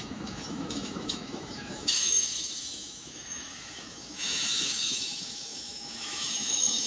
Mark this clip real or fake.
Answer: fake